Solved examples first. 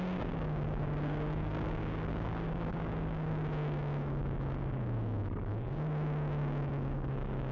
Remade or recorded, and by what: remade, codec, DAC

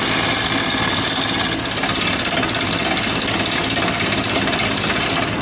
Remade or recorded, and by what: recorded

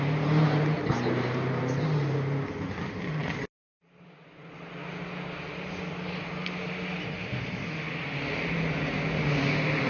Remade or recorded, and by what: recorded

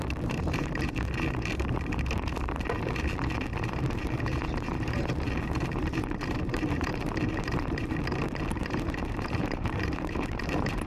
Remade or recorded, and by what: remade, vocoder, BigVGAN v2